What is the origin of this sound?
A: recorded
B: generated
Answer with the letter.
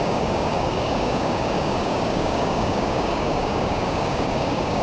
B